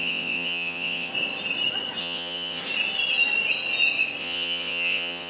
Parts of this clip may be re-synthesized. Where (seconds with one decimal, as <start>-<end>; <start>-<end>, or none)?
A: 0.0-1.1; 2.0-2.6; 4.2-5.3